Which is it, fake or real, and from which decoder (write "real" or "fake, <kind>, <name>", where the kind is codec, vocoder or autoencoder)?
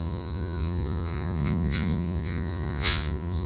fake, vocoder, Vocos